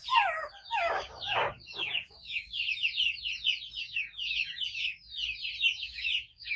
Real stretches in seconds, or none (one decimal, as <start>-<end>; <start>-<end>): 0.0-0.6; 2.7-3.8; 4.9-5.7